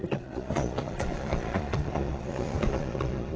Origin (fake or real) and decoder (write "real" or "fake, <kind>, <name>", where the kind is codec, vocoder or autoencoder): fake, vocoder, Vocos